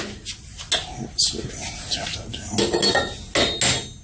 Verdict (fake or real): real